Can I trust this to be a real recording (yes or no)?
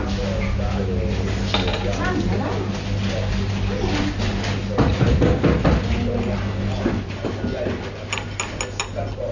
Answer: yes